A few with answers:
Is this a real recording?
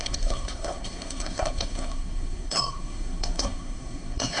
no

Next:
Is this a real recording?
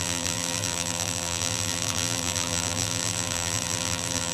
no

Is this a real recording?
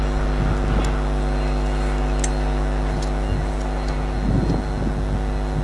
yes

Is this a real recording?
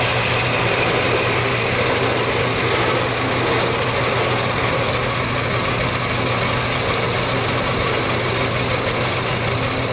yes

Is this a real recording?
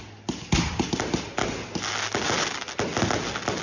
yes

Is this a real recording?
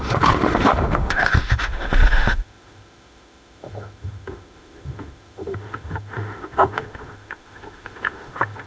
no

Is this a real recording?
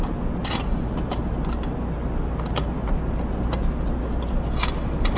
yes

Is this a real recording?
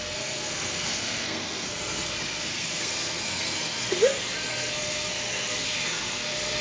no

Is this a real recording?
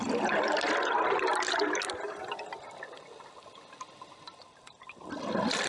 yes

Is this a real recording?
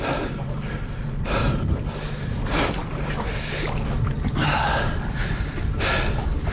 yes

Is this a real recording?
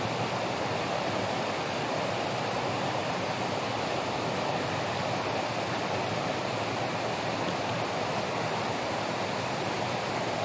yes